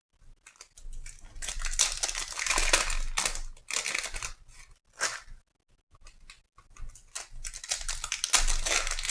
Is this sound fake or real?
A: real